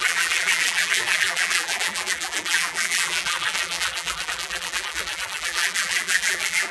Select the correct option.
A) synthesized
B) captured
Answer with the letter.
A